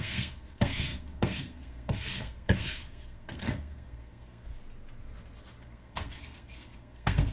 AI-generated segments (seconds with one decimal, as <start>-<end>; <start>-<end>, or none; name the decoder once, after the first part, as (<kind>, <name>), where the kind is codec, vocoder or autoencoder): 0.0-4.6 (codec, SNAC); 5.6-7.3